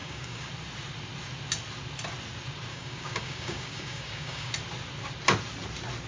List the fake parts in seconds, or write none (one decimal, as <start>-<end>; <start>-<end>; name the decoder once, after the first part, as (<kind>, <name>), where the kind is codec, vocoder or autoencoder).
0.0-0.5 (codec, DAC); 2.7-4.5